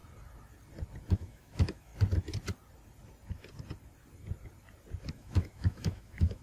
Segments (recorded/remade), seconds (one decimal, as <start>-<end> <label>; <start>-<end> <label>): 0.0-1.1 recorded; 1.1-1.9 remade; 1.9-5.1 recorded; 5.1-6.4 remade